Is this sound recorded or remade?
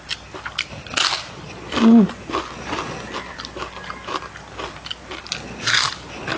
recorded